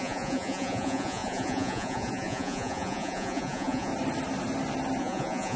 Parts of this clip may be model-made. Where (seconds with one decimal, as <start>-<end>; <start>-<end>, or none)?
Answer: 0.0-3.9; 5.0-5.6